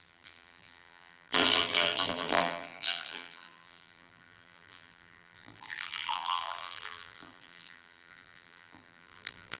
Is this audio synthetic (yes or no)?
yes